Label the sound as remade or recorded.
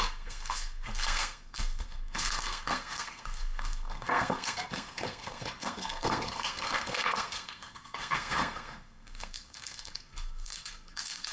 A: remade